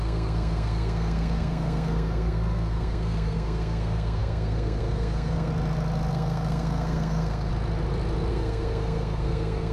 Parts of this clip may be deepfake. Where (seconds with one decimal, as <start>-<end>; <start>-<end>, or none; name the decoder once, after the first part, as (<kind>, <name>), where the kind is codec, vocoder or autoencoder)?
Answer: 0.0-5.5 (codec, SNAC); 6.1-7.5; 8.3-9.7